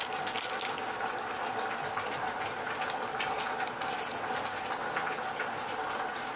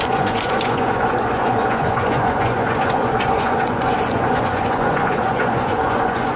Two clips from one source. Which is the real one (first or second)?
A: first